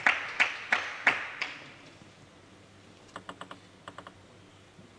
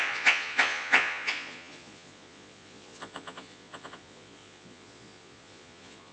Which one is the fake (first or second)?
second